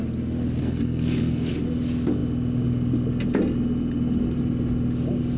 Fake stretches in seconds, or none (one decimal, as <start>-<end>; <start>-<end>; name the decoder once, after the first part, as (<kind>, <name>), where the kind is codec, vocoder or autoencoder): 0.6-1.5 (codec, SNAC)